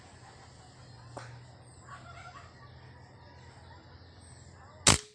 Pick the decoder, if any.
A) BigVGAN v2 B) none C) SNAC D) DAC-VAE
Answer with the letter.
B